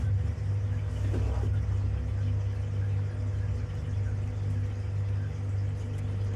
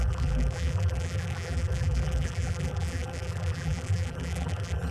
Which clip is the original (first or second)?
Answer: first